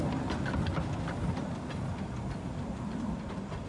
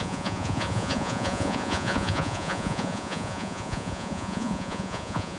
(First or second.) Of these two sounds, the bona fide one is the first